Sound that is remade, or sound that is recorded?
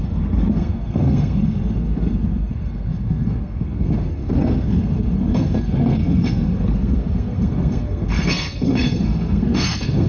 remade